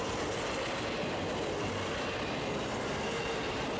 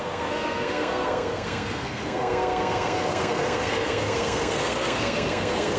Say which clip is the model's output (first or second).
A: second